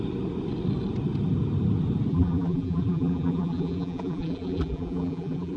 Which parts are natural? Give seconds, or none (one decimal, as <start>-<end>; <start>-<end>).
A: 0.0-2.1